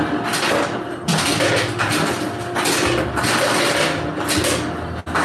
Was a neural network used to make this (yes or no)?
no